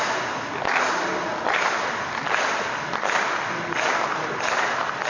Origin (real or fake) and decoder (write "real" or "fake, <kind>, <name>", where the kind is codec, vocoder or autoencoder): real